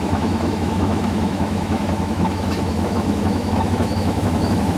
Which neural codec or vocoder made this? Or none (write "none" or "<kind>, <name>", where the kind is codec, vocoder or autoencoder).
autoencoder, DAC-VAE